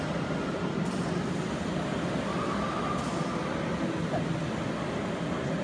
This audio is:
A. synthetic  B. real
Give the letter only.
B